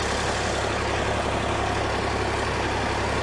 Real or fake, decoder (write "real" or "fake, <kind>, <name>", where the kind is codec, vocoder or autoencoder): real